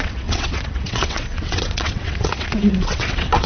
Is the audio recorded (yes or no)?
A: no